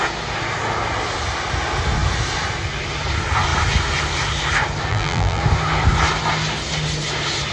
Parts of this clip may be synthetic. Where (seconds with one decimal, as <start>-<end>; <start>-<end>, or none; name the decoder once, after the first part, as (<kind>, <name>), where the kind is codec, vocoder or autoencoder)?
4.9-5.4 (vocoder, BigVGAN v2)